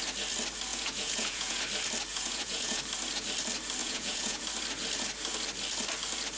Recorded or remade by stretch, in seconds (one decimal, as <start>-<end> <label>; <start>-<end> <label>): 0.0-0.7 recorded; 0.7-1.6 remade; 1.6-2.1 recorded; 2.1-2.8 remade; 2.8-3.8 recorded; 3.8-4.4 remade; 4.4-6.4 recorded